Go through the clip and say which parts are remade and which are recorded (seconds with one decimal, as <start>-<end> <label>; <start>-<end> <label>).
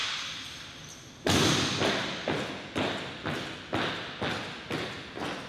0.0-5.5 recorded